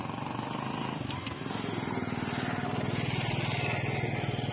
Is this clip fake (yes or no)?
no